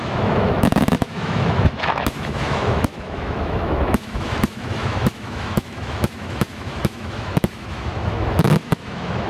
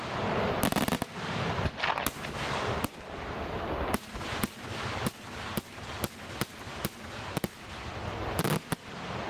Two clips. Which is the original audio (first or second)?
second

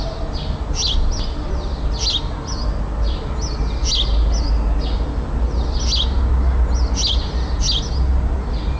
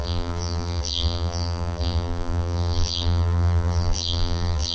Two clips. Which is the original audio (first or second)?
first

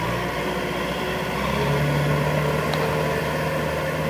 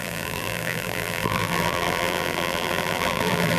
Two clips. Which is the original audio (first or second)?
first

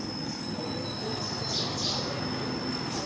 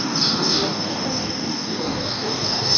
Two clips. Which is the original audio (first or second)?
first